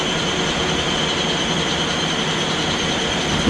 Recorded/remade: recorded